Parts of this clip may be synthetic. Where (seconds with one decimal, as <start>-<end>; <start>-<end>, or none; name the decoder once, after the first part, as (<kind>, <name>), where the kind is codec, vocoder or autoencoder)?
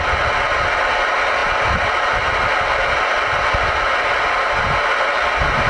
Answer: none